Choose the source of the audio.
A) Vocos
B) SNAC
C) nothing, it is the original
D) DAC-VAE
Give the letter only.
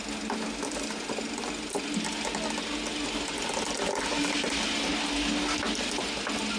C